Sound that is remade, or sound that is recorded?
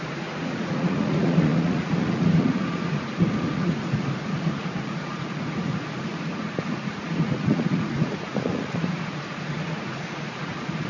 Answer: remade